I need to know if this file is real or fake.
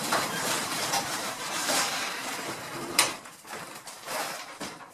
fake